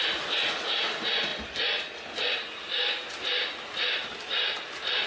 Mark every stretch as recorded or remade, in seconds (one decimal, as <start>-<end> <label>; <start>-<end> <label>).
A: 0.0-5.1 recorded